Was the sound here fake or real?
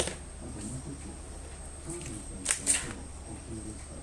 real